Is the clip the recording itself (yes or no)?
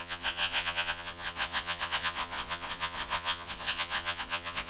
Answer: no